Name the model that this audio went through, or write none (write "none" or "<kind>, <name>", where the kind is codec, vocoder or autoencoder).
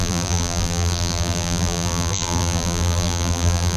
vocoder, BigVGAN v2